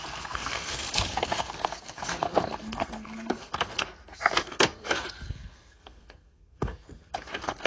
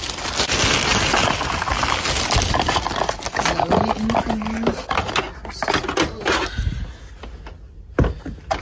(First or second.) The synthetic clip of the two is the first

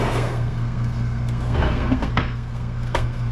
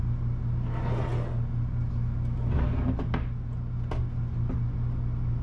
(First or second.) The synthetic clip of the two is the first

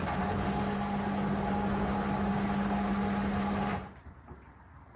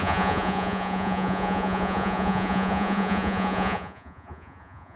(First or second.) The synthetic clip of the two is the second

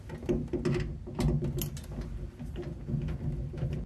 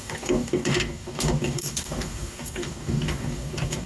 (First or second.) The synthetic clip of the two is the second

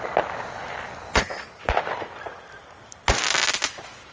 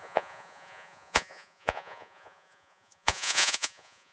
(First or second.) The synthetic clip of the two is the second